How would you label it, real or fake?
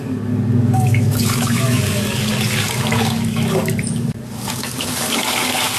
fake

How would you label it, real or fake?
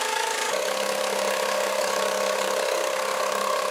fake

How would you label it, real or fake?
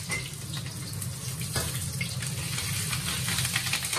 real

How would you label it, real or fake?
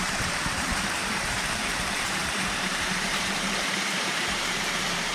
fake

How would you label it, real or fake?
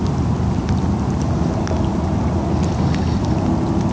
real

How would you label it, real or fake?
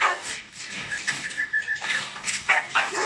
fake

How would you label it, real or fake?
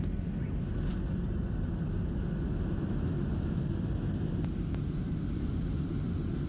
real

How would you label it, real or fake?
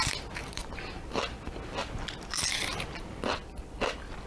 real